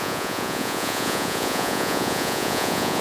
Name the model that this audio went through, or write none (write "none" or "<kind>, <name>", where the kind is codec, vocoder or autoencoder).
vocoder, Vocos